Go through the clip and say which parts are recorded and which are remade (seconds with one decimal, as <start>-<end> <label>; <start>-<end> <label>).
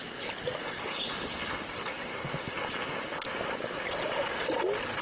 0.0-5.0 recorded